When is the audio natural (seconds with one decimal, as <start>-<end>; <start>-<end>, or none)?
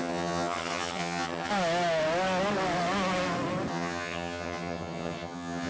1.5-3.7